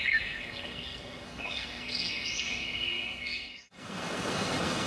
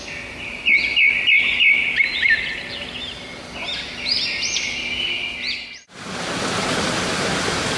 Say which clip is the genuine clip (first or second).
second